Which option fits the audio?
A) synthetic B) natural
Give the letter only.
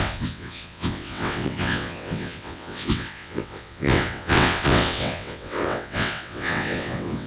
A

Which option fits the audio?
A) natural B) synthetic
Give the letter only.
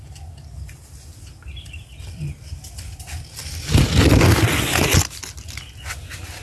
A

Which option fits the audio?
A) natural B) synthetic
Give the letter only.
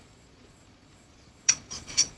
B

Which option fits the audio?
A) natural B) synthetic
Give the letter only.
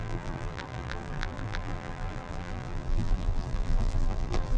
B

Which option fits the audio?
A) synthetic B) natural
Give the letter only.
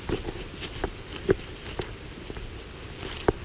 B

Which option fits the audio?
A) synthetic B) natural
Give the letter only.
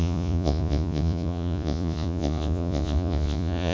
A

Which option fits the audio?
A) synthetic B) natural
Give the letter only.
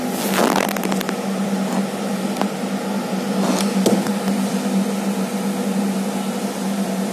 B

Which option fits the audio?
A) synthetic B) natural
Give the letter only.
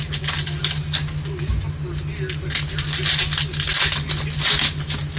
B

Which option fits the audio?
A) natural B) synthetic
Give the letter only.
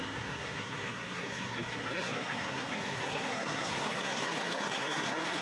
B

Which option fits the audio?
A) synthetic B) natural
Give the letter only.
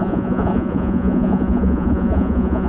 A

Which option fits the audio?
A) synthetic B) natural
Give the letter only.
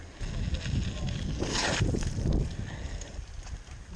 B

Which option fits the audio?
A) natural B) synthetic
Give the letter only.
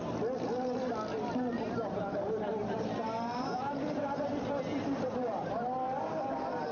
B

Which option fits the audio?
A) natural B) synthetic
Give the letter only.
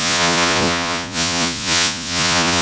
B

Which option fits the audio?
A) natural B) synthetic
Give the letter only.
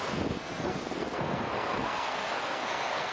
B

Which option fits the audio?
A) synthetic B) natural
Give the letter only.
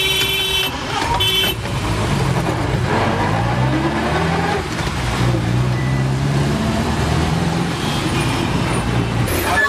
A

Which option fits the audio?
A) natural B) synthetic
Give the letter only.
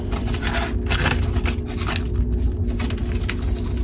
A